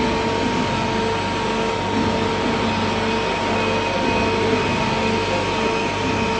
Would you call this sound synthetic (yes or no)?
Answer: no